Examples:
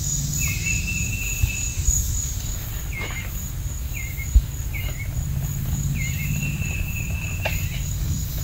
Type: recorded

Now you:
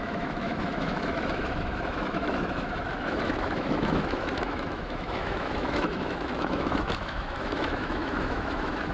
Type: remade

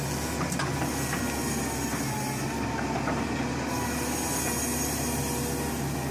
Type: recorded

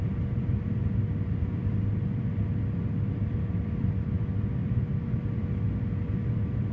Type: recorded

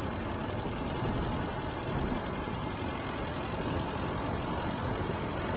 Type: recorded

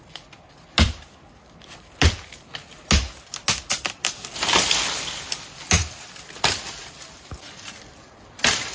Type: recorded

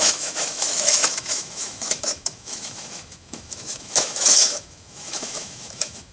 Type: remade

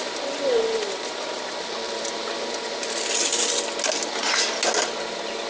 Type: recorded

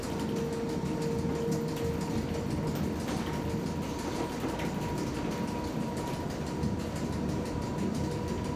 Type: recorded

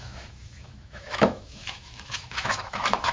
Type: remade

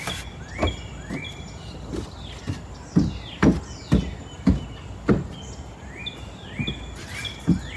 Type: recorded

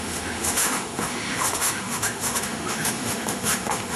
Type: remade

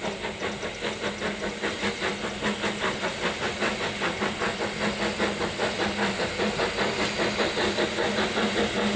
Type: recorded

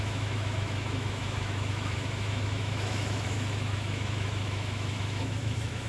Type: remade